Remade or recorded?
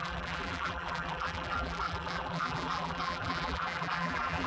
remade